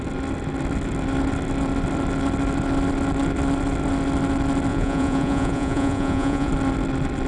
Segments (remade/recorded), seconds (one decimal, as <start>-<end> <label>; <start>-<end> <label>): 0.0-4.7 recorded; 4.7-6.5 remade; 6.5-7.3 recorded